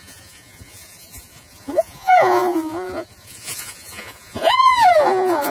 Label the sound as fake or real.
fake